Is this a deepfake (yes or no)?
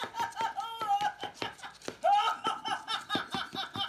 no